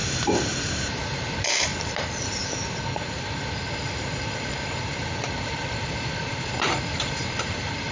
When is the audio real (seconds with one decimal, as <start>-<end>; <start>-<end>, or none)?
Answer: 1.7-2.9